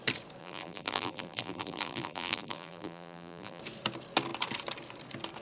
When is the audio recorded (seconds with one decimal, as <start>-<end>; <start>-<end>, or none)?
0.0-0.4; 3.6-5.4